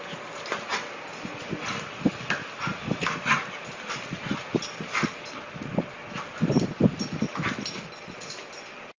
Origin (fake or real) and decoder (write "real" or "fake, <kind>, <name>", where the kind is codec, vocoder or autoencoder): real